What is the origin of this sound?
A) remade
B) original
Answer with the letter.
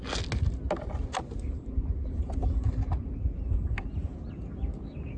B